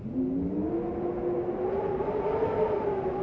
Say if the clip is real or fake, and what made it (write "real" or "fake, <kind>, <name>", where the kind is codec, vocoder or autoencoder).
real